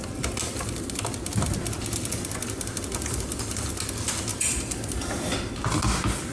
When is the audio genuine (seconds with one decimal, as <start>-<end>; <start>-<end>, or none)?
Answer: 0.0-4.3; 5.5-6.3